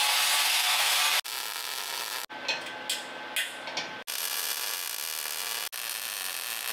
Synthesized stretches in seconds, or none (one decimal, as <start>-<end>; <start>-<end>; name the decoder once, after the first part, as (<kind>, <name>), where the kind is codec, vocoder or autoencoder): 0.5-1.0 (codec, SNAC)